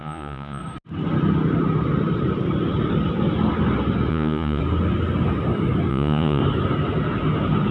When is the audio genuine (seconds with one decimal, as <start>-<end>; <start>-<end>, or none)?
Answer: 0.6-4.1; 4.6-5.9; 6.4-7.7